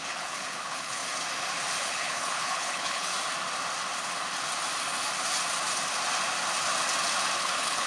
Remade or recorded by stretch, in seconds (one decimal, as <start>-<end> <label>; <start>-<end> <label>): 0.0-1.0 remade; 1.0-1.8 recorded; 1.8-3.1 remade; 3.1-7.4 recorded; 7.4-7.9 remade